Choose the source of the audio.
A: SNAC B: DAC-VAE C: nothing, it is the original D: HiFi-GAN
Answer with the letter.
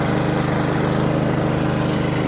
C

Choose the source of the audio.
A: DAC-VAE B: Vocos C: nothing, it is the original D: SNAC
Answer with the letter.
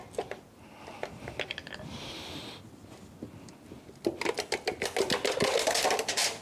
C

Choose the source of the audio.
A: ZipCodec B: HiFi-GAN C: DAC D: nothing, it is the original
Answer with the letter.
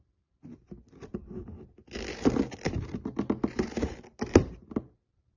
D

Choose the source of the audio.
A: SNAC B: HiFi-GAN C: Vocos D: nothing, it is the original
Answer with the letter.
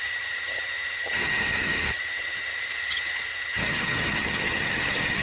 B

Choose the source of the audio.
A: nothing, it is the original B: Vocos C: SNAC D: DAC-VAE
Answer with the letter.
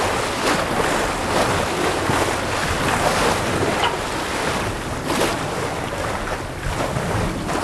A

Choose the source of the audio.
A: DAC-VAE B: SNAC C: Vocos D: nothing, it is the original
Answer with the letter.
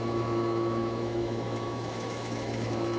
A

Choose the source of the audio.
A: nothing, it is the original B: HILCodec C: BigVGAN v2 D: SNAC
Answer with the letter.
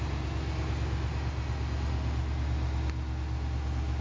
A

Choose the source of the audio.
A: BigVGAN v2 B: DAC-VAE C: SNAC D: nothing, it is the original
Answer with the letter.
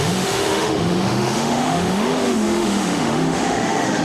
B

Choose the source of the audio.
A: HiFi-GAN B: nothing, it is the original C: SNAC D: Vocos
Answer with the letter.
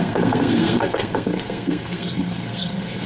C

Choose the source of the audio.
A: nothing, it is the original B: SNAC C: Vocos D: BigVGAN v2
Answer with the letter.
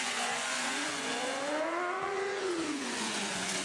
C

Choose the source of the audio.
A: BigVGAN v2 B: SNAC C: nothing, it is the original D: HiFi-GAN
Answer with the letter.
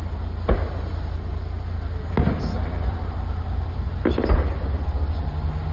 C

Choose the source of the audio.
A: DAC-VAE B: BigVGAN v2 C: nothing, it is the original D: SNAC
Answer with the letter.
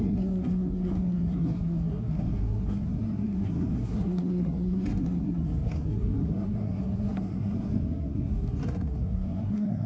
D